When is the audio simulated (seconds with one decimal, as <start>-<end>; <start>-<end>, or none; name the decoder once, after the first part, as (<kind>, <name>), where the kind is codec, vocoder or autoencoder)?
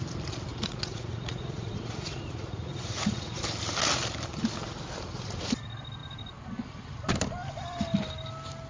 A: 0.5-3.4 (vocoder, Vocos)